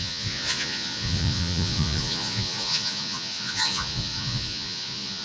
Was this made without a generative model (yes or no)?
no